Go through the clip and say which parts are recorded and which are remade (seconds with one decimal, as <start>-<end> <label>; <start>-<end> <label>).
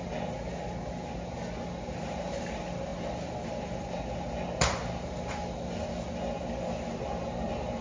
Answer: 0.0-7.8 recorded